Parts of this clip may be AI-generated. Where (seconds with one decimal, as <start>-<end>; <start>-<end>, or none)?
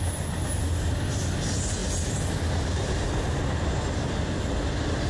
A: none